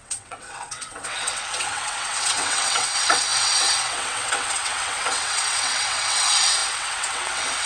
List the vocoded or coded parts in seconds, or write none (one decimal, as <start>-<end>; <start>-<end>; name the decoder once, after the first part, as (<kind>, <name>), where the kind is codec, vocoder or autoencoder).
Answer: 0.0-7.7 (vocoder, WaveNeXt)